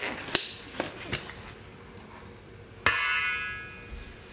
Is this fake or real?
real